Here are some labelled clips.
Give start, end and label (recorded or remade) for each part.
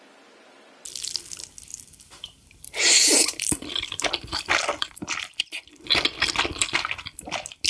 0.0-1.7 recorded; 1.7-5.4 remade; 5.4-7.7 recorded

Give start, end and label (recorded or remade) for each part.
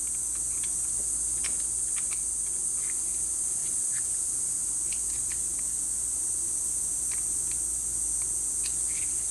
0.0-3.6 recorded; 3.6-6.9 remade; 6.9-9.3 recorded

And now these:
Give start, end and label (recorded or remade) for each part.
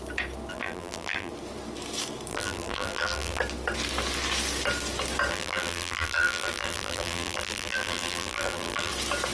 0.0-0.5 recorded; 0.5-1.3 remade; 1.3-2.3 recorded; 2.3-3.4 remade; 3.4-5.3 recorded; 5.3-8.9 remade; 8.9-9.3 recorded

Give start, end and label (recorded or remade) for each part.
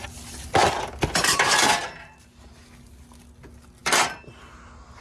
0.0-5.0 recorded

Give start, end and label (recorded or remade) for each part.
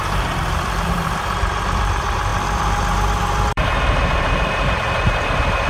0.0-5.7 remade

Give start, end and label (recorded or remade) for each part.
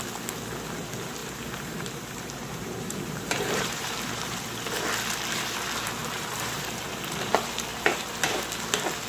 0.0-1.2 recorded; 1.2-4.4 remade; 4.4-6.0 recorded; 6.0-7.3 remade; 7.3-7.7 recorded; 7.7-8.4 remade; 8.4-9.1 recorded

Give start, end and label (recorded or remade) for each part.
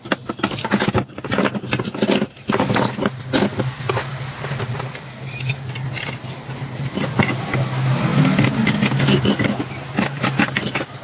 0.0-4.1 recorded; 4.1-4.8 remade; 4.8-11.0 recorded